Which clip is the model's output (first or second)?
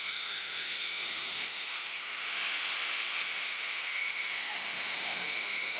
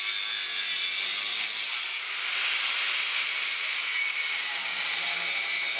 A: first